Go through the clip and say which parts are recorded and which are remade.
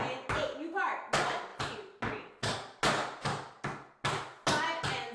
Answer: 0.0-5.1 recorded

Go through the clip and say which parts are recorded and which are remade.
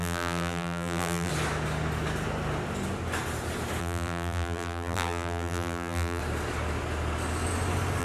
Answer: 0.0-1.3 remade; 1.3-3.8 recorded; 3.8-6.2 remade; 6.2-8.0 recorded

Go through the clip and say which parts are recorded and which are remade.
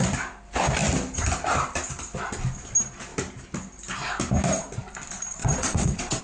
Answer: 0.0-5.4 recorded; 5.4-6.2 remade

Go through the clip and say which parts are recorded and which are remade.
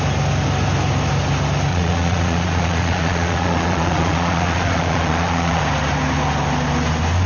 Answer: 0.0-1.7 recorded; 1.7-5.6 remade; 5.6-7.3 recorded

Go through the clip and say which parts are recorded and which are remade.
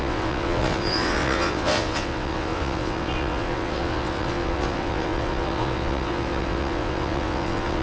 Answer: 0.0-7.8 remade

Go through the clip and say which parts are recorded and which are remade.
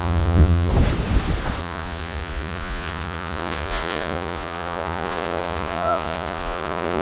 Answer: 0.0-0.7 remade; 0.7-1.6 recorded; 1.6-7.0 remade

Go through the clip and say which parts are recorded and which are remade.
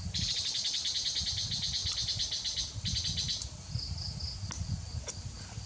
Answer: 0.0-5.7 recorded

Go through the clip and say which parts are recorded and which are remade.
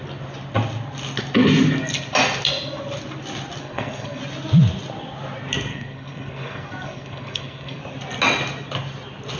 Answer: 0.0-3.6 recorded; 3.6-4.2 remade; 4.2-5.7 recorded; 5.7-7.8 remade; 7.8-9.4 recorded